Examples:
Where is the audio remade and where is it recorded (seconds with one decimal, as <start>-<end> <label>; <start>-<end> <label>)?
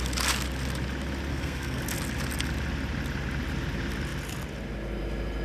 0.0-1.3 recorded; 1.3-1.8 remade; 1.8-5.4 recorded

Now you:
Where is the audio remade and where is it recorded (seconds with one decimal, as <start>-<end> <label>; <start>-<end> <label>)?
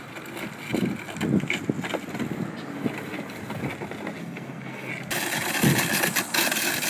0.0-4.2 recorded; 4.2-4.9 remade; 4.9-6.9 recorded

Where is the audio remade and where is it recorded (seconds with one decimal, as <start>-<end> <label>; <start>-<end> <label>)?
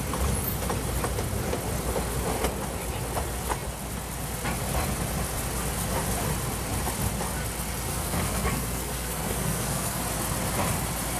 0.0-7.9 recorded; 7.9-10.0 remade; 10.0-11.2 recorded